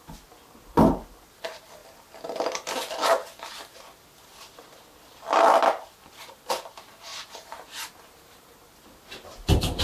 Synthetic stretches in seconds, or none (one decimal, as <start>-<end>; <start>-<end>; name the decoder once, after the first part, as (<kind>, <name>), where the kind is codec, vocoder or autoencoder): 7.1-9.8 (vocoder, BigVGAN v2)